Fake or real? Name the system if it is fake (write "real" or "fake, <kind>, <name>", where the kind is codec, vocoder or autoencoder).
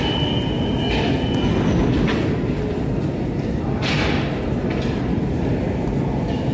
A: real